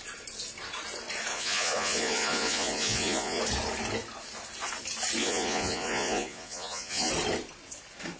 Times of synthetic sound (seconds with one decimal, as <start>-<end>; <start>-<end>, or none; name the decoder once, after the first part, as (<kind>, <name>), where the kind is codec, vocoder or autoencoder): 1.3-3.4 (vocoder, Vocos); 5.2-7.1